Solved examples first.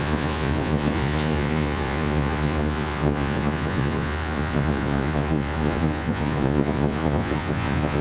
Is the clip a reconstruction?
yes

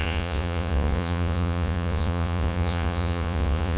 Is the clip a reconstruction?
yes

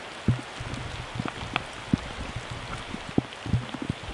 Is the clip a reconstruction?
no